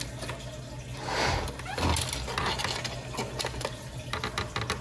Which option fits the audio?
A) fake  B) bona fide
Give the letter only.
B